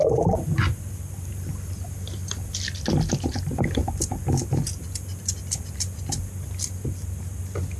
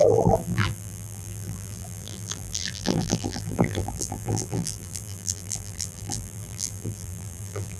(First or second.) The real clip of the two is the first